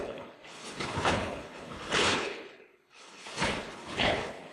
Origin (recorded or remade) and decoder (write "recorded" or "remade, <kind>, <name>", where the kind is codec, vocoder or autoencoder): remade, codec, HILCodec